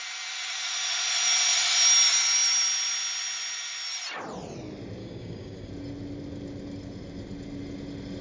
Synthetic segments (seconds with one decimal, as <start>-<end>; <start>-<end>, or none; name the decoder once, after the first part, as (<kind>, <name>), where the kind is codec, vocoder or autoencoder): 5.0-5.7 (codec, DAC)